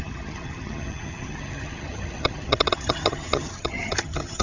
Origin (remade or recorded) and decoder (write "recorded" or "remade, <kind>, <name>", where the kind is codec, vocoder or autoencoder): remade, vocoder, HiFi-GAN